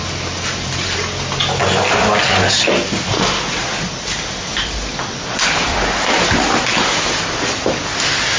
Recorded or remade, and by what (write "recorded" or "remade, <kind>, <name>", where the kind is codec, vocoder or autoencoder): recorded